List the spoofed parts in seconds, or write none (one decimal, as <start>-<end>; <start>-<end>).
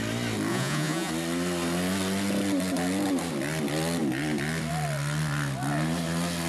0.5-1.1